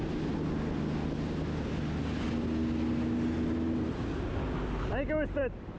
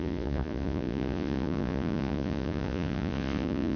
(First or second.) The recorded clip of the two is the first